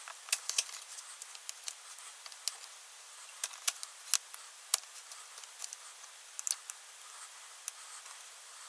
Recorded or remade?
recorded